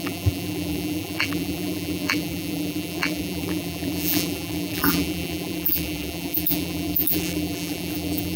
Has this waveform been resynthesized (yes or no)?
yes